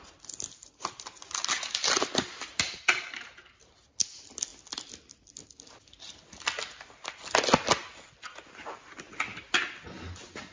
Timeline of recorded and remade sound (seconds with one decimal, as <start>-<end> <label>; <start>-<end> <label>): 0.0-0.6 recorded; 0.6-3.8 remade; 3.8-10.5 recorded